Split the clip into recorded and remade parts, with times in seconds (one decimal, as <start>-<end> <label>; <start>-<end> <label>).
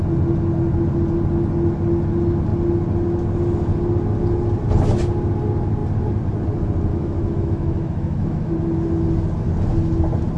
0.0-6.9 recorded; 6.9-8.5 remade; 8.5-10.4 recorded